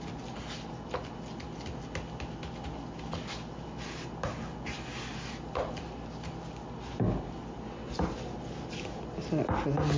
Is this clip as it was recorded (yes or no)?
yes